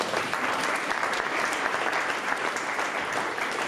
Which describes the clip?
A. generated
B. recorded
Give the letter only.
A